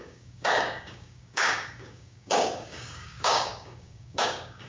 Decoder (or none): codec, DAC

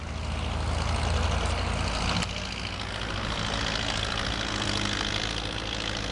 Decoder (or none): none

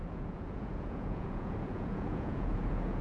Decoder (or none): vocoder, Vocos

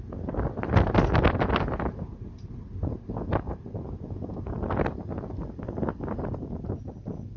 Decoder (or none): none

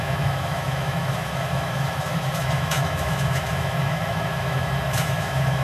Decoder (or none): autoencoder, DAC-VAE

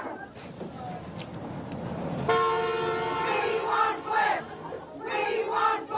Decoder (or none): none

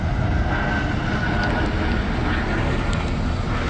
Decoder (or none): none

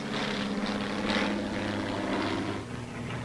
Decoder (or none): none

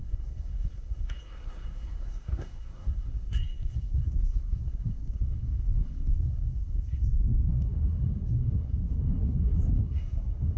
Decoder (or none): codec, SNAC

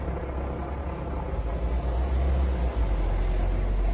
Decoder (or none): none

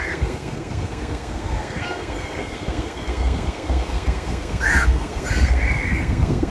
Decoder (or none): codec, SNAC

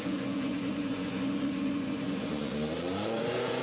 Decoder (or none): vocoder, Vocos